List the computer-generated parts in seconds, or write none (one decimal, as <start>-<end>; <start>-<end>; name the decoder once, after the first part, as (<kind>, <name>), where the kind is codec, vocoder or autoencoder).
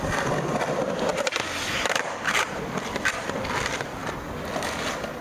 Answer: 0.0-1.1 (vocoder, BigVGAN v2); 2.4-4.0; 4.6-5.2